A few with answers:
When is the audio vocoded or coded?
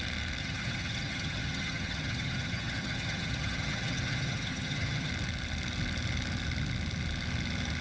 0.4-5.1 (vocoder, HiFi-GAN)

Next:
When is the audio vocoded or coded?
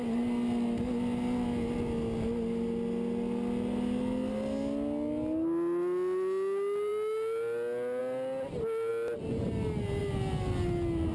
none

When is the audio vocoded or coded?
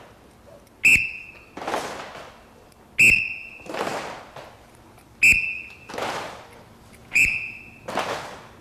7.0-7.6 (vocoder, Vocos)